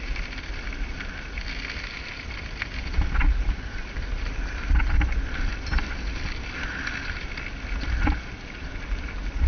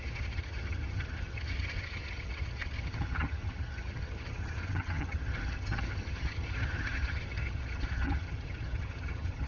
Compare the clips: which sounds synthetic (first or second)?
second